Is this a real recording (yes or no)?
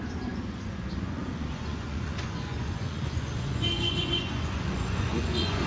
no